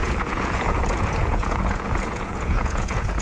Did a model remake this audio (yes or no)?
yes